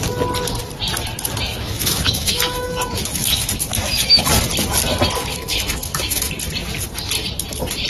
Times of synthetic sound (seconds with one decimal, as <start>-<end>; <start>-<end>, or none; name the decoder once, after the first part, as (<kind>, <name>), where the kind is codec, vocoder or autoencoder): 1.5-4.2 (autoencoder, DAC-VAE); 5.3-6.3